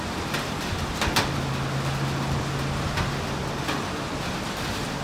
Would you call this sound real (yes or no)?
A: yes